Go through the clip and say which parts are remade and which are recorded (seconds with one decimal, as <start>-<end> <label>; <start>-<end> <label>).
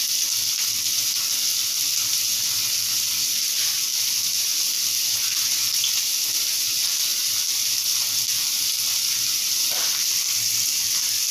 0.0-1.6 recorded; 1.6-2.2 remade; 2.2-7.1 recorded; 7.1-9.9 remade; 9.9-11.3 recorded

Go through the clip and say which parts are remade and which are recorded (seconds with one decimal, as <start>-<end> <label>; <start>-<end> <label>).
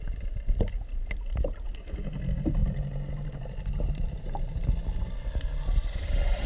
0.0-6.5 recorded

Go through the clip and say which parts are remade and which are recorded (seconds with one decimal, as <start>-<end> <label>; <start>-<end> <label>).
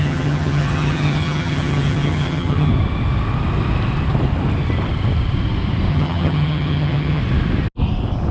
0.0-2.7 remade; 2.7-5.9 recorded; 5.9-7.2 remade; 7.2-8.3 recorded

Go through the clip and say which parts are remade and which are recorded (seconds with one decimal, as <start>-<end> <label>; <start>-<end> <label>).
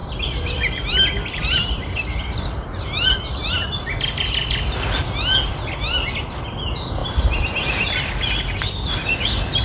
0.0-5.0 remade; 5.0-5.5 recorded; 5.5-6.5 remade; 6.5-9.6 recorded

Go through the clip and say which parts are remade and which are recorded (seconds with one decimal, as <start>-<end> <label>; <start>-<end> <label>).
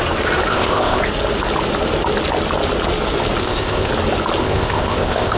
0.0-0.5 recorded; 0.5-1.0 remade; 1.0-3.4 recorded; 3.4-3.9 remade; 3.9-4.4 recorded; 4.4-5.4 remade